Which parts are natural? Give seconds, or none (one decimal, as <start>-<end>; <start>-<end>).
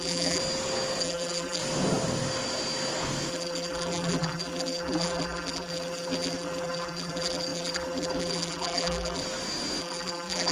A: 0.4-1.0; 1.6-3.3; 9.2-9.8